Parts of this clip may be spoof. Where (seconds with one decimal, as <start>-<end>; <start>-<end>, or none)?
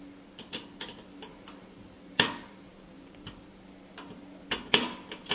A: 1.3-3.6